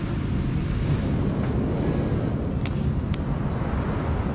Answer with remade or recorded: recorded